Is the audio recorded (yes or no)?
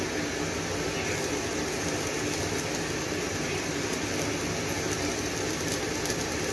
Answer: yes